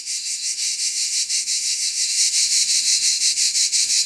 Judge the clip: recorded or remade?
remade